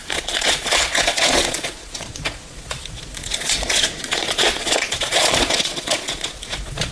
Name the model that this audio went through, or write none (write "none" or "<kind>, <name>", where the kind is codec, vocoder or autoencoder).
vocoder, Vocos